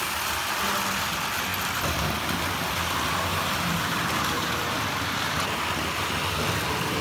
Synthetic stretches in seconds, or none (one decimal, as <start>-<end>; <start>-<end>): 3.3-5.6